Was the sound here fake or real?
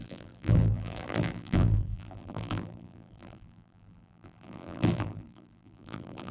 fake